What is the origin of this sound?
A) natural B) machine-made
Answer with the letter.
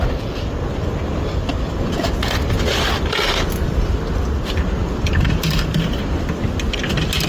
A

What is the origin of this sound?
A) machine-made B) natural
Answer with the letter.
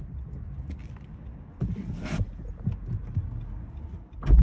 B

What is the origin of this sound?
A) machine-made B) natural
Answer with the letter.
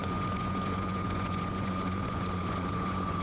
A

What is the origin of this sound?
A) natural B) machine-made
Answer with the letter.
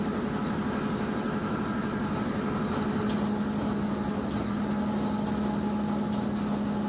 A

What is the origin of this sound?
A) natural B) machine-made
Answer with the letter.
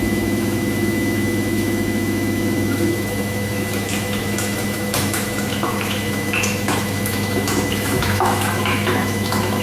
B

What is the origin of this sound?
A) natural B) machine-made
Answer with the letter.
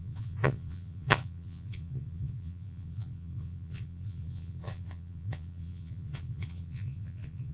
B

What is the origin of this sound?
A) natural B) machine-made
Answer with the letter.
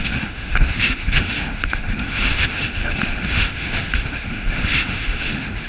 B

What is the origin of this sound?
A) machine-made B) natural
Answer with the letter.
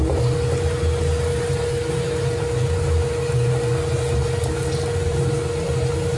B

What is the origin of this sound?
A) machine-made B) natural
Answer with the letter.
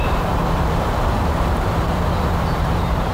A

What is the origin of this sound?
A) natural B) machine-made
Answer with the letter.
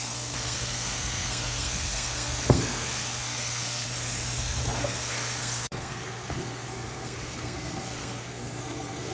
B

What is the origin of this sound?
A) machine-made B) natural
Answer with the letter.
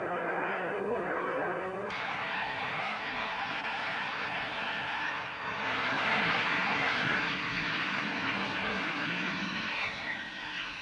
A